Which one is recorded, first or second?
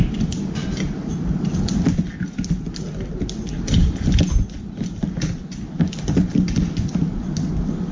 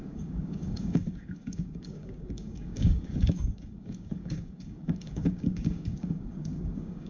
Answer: first